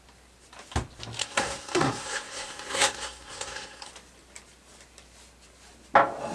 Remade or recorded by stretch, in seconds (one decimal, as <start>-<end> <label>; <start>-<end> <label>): 0.0-1.2 recorded; 1.2-3.9 remade; 3.9-6.3 recorded